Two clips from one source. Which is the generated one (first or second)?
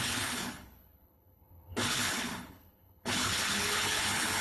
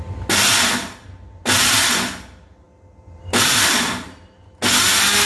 first